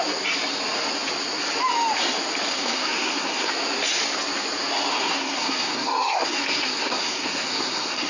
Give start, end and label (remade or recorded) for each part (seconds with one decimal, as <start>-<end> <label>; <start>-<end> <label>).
0.0-2.5 recorded; 2.5-3.5 remade; 3.5-4.9 recorded; 4.9-8.1 remade